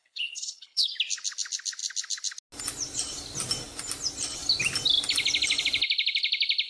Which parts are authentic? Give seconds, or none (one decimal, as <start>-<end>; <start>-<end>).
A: 0.9-6.7